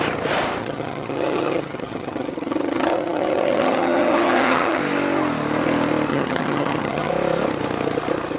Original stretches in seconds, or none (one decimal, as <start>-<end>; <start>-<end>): 0.0-0.6; 4.8-6.1; 7.1-8.4